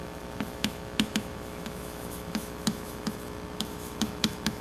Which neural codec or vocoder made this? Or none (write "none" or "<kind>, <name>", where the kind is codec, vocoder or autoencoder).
autoencoder, DAC-VAE